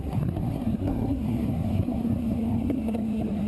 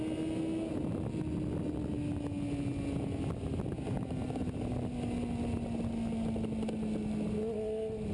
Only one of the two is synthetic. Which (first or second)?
first